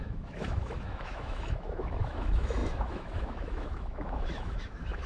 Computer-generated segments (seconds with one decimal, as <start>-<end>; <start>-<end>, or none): 0.0-5.1